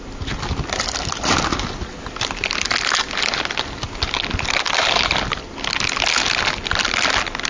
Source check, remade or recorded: recorded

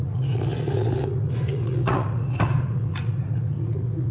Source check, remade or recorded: remade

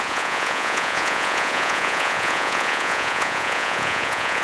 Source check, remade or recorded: remade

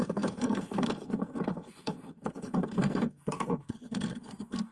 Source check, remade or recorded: remade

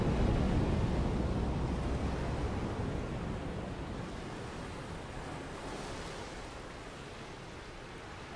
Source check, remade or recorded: recorded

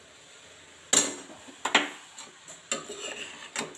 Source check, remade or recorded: recorded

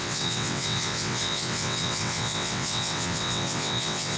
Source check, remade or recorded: remade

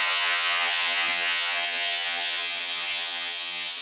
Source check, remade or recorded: remade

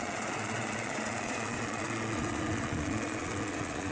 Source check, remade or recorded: remade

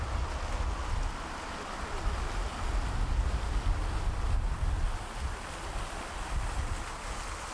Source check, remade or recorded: recorded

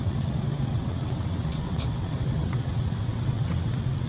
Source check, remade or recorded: remade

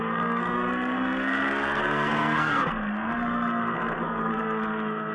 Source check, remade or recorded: remade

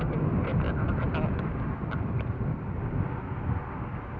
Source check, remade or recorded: recorded